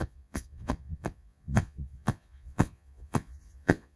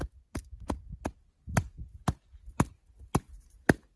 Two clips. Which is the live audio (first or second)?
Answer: second